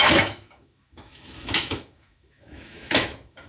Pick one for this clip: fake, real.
fake